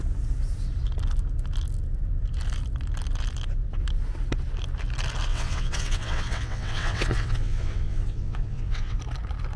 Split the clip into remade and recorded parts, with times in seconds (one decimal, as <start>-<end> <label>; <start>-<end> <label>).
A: 0.0-5.3 recorded; 5.3-9.0 remade; 9.0-9.6 recorded